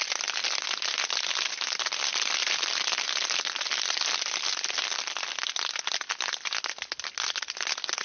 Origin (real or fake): real